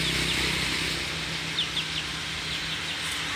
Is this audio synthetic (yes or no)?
no